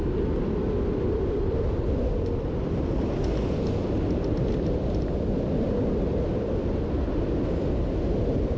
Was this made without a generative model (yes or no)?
yes